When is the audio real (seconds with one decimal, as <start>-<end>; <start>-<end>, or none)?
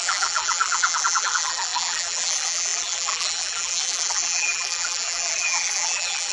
none